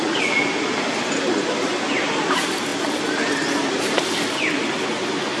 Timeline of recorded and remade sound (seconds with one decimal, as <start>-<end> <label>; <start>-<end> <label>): 0.0-5.4 recorded